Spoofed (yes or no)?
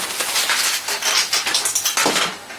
no